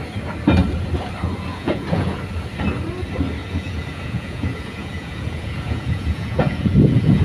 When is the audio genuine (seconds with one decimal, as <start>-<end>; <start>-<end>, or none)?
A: 0.0-1.5; 2.2-3.4